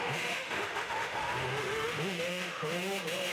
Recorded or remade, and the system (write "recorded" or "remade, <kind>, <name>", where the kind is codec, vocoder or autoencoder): remade, autoencoder, DAC-VAE